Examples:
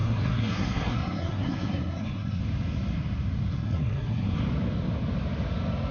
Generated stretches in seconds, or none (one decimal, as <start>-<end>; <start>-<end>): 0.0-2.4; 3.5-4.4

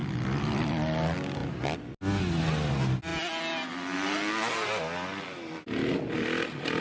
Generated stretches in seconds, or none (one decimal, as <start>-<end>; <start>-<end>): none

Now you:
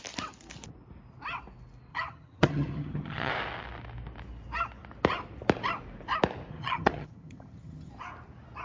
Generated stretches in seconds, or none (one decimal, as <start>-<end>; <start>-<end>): 1.9-3.3; 6.5-7.9

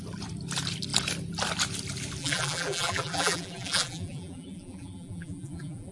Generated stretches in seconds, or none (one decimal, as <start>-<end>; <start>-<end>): 2.2-5.9

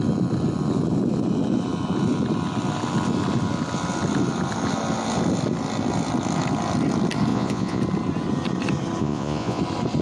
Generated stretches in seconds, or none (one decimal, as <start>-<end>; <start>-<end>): 7.3-7.8; 9.0-9.6

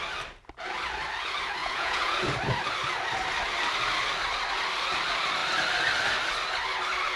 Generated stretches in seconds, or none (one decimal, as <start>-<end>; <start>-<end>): 1.6-2.2

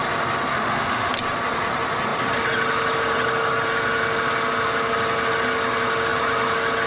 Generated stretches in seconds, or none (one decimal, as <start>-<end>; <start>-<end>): 0.5-1.1

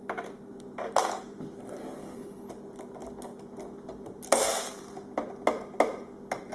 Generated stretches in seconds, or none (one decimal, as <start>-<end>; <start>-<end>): 2.0-2.5